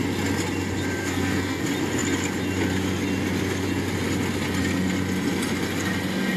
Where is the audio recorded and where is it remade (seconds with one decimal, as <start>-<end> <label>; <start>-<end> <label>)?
0.0-1.0 recorded; 1.0-1.6 remade; 1.6-6.4 recorded